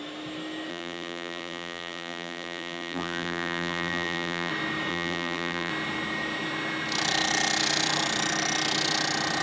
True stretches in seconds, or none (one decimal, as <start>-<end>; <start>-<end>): 0.0-0.7; 4.5-4.9; 5.7-9.4